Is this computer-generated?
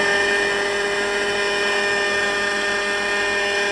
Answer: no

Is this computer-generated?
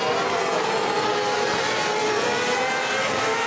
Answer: no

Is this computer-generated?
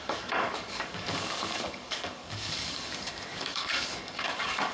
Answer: yes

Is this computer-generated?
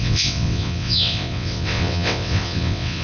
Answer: yes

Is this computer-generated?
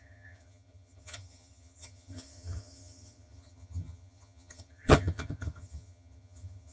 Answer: yes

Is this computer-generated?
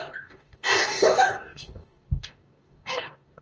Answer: yes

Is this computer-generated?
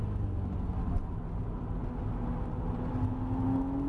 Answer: no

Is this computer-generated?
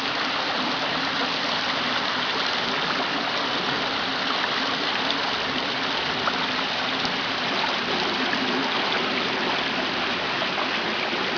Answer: no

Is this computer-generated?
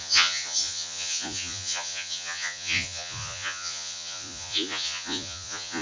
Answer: yes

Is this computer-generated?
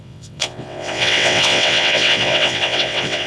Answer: yes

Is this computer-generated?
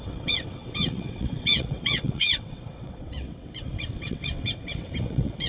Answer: yes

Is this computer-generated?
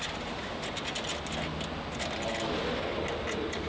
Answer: no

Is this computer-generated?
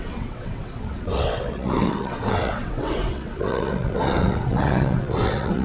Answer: yes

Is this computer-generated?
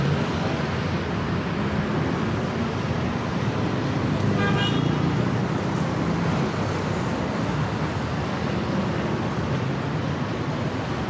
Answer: no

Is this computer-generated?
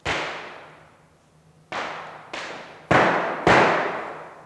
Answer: no